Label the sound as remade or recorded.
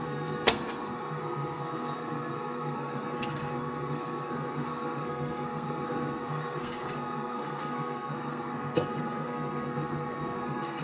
remade